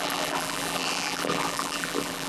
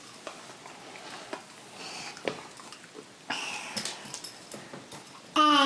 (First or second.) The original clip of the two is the second